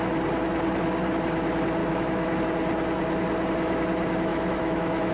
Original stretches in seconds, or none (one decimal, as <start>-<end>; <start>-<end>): 0.0-1.8; 2.4-4.3